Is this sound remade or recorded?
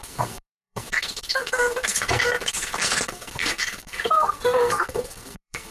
remade